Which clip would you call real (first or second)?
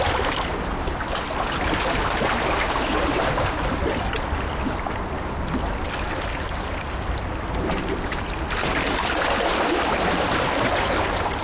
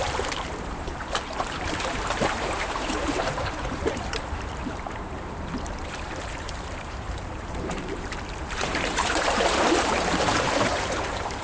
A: first